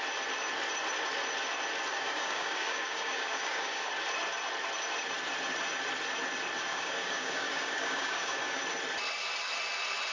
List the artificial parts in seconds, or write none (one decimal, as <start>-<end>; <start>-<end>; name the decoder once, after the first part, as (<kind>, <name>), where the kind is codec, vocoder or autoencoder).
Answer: 1.9-3.9 (codec, DAC); 6.7-8.6